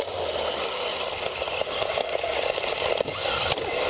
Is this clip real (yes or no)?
yes